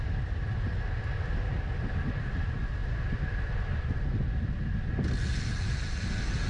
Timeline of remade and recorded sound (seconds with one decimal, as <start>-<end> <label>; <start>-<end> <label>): 0.0-6.5 recorded